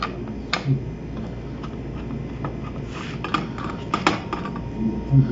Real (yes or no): yes